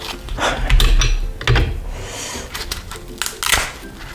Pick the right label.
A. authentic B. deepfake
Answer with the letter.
A